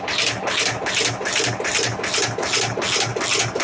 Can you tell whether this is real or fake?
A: real